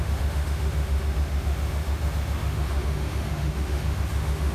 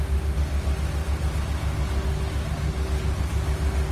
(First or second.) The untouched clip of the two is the second